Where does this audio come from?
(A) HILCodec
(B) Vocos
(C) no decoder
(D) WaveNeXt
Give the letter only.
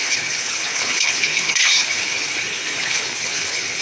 A